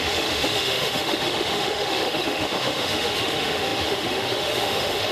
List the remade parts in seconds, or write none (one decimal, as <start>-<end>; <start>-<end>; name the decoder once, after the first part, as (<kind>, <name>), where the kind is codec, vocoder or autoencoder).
0.0-5.1 (autoencoder, DAC-VAE)